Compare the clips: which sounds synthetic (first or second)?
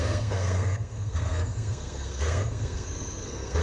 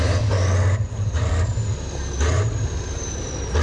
first